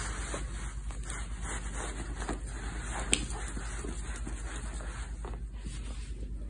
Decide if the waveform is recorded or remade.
recorded